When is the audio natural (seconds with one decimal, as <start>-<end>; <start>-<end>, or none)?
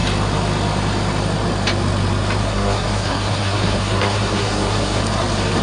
0.0-2.4; 5.0-5.6